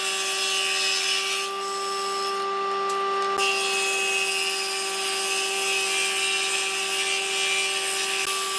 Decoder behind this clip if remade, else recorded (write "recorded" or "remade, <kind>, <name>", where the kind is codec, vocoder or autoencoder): recorded